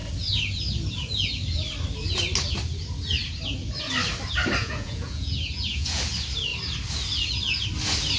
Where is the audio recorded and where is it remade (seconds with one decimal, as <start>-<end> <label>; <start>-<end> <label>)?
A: 0.0-4.6 recorded; 4.6-6.0 remade; 6.0-8.2 recorded